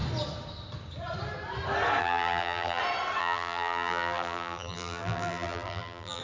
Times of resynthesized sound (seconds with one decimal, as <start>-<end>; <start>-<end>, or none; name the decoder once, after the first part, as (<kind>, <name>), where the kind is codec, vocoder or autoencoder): 2.0-2.8 (vocoder, BigVGAN v2); 3.2-6.2